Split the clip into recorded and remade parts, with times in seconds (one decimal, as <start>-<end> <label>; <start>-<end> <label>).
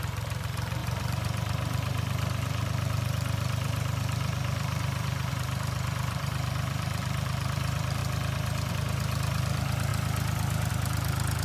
0.0-8.0 remade; 8.0-8.7 recorded; 8.7-9.9 remade; 9.9-10.7 recorded; 10.7-11.4 remade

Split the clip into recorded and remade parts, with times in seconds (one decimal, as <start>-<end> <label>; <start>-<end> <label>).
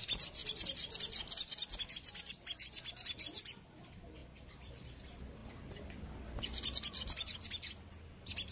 0.0-4.2 recorded; 4.2-5.0 remade; 5.0-5.4 recorded; 5.4-5.9 remade; 5.9-8.5 recorded